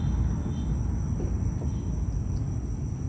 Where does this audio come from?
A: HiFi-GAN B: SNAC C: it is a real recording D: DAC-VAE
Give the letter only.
C